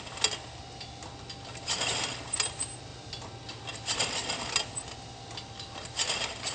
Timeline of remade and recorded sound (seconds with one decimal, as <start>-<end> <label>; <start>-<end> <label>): 0.0-6.5 recorded